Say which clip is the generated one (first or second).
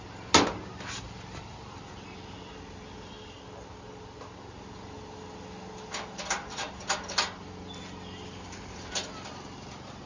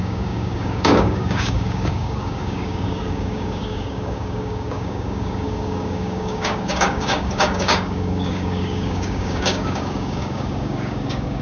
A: second